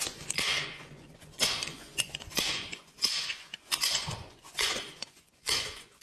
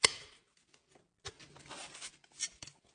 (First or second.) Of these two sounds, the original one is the second